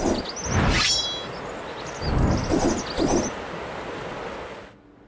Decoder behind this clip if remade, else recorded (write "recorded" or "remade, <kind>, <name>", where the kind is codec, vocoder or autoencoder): recorded